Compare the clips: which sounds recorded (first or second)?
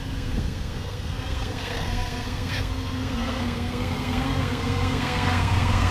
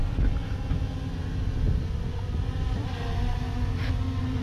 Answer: second